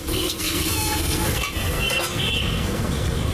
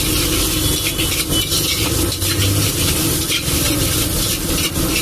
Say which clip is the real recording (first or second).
second